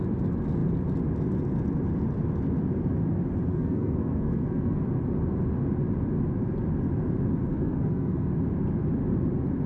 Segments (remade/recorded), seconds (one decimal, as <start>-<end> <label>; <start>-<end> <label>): 0.0-3.5 recorded; 3.5-4.8 remade; 4.8-7.5 recorded; 7.5-8.3 remade; 8.3-9.7 recorded